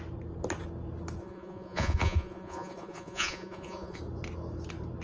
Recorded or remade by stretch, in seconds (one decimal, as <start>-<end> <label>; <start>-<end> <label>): 0.0-1.2 recorded; 1.2-4.0 remade; 4.0-5.0 recorded